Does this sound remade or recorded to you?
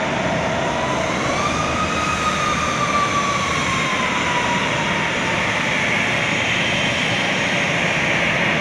recorded